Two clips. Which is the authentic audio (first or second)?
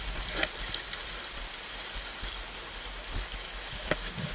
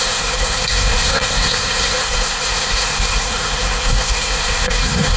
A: first